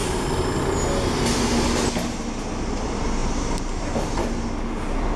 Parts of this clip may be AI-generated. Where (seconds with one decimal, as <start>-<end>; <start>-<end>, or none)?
3.2-4.2